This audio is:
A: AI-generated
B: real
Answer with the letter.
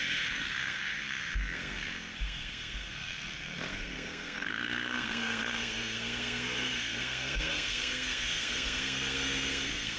A